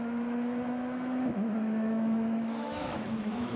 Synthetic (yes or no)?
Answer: yes